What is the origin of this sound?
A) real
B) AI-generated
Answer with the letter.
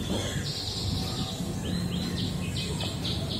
A